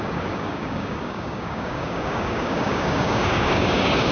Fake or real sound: fake